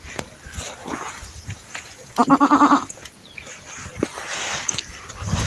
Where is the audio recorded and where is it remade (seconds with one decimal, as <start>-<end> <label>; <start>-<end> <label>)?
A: 0.0-0.8 recorded; 0.8-3.4 remade; 3.4-5.5 recorded